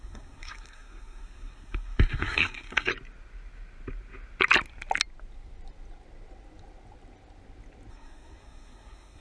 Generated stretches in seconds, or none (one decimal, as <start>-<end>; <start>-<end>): 0.0-2.9; 7.9-9.2

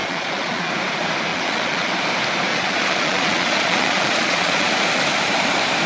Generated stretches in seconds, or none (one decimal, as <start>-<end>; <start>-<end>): 0.0-0.7; 1.3-1.9; 2.5-4.7

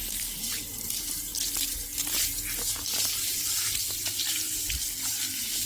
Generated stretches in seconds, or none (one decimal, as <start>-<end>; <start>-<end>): none

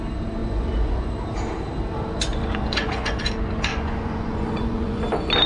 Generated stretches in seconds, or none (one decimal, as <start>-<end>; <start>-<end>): 0.4-1.1; 2.3-3.3; 3.7-5.0

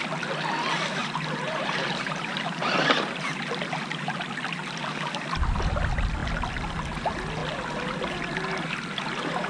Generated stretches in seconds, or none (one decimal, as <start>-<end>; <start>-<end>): 1.0-3.3